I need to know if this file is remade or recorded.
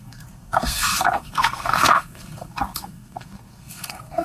remade